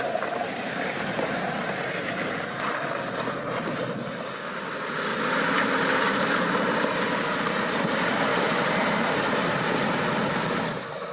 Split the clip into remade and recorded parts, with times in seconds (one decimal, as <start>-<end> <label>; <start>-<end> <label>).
0.0-0.4 recorded; 0.4-2.2 remade; 2.2-5.1 recorded; 5.1-7.5 remade; 7.5-8.3 recorded; 8.3-9.8 remade; 9.8-11.1 recorded